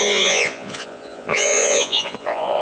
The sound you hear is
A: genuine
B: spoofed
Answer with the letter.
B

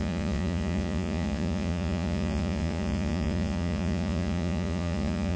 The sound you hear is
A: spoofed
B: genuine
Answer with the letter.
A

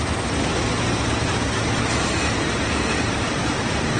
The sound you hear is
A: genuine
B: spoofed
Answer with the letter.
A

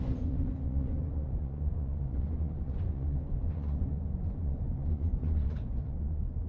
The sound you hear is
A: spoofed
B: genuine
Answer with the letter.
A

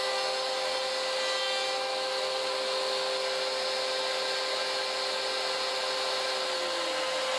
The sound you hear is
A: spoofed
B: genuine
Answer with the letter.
B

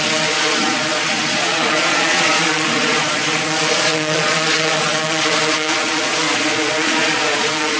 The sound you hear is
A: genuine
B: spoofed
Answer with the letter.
B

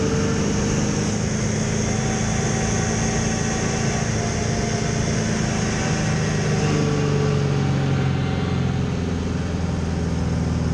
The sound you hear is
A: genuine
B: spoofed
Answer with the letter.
A